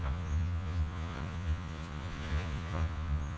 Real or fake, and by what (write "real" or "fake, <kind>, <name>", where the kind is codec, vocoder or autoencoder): fake, vocoder, Vocos